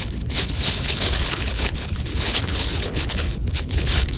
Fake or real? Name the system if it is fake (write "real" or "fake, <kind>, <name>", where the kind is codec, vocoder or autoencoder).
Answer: fake, codec, HILCodec